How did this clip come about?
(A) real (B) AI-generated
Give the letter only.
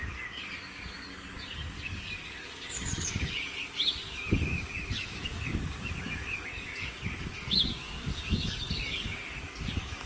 B